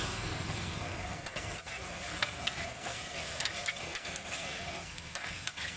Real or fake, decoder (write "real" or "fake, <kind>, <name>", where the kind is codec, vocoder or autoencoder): fake, codec, SNAC